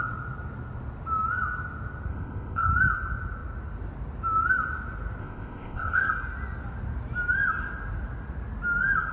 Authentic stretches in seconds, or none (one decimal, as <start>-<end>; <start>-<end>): 0.0-2.1; 2.7-5.2; 6.1-9.1